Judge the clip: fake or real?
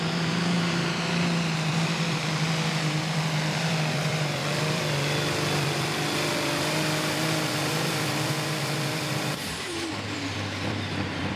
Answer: fake